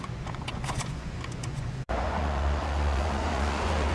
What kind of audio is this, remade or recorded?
remade